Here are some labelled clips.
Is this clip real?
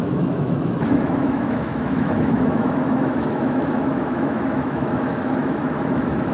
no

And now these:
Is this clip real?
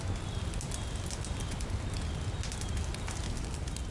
yes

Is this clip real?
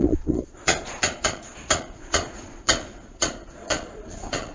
no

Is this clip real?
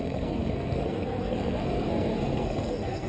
no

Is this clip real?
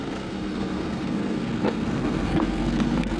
no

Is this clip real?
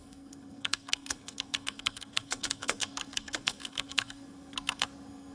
no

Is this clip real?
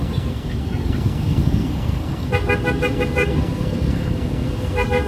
no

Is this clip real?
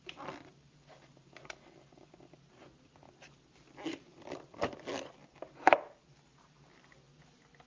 yes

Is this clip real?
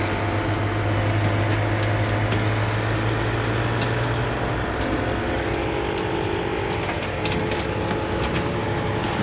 yes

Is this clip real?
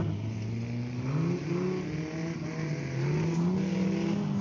yes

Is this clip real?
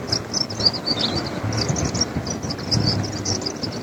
yes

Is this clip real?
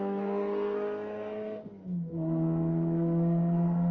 no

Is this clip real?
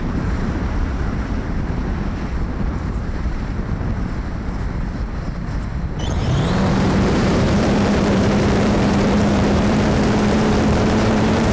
no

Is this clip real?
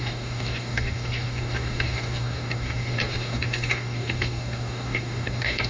no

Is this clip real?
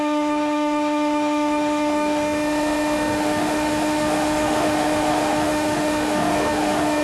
no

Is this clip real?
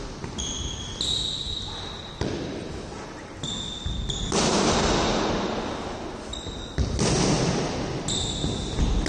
yes